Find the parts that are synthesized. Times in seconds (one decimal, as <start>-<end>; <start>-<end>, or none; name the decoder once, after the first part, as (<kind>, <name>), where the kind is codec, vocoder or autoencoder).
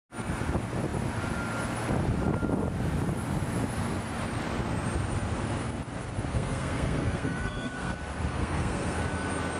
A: 6.3-7.9 (codec, SNAC); 8.3-9.0